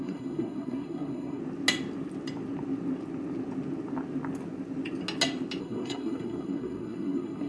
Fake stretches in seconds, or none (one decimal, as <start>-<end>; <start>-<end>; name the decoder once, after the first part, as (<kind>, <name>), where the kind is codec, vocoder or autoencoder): 0.0-1.4 (codec, SNAC); 5.6-7.5